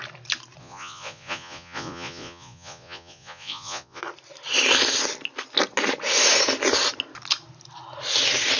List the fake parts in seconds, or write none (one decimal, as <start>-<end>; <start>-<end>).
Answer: 0.6-4.0